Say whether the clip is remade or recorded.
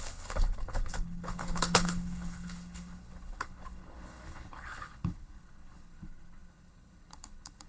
remade